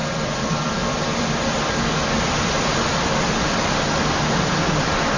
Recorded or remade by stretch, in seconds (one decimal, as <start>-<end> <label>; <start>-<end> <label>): 0.0-1.7 remade; 1.7-5.2 recorded